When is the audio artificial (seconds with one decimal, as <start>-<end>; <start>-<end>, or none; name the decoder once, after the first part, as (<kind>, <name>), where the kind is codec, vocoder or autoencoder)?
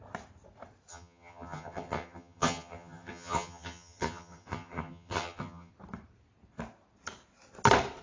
0.9-5.7 (vocoder, HiFi-GAN)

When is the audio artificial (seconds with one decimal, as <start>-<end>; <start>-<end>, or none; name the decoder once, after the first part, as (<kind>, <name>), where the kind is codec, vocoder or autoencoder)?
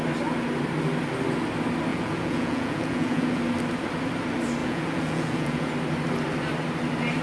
1.9-3.4 (vocoder, Vocos); 4.6-5.7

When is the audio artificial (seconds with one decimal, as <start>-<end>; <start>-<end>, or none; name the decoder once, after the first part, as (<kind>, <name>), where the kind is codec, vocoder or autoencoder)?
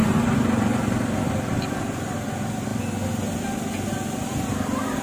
none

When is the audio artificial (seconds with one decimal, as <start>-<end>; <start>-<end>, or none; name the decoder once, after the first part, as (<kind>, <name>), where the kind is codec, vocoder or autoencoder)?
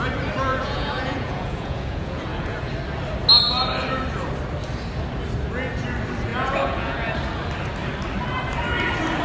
0.5-2.7 (vocoder, Vocos); 6.3-7.1